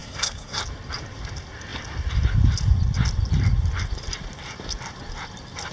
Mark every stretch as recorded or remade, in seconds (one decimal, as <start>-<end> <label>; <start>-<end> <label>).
0.0-0.6 remade; 0.6-5.7 recorded